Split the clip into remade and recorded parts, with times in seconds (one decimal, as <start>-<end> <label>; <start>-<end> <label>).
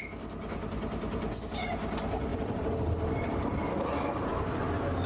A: 0.0-2.3 recorded; 2.3-5.1 remade